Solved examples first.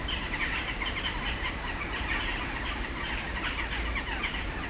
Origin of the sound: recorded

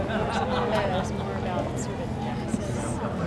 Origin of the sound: recorded